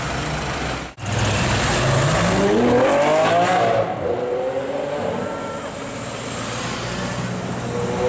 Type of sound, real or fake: real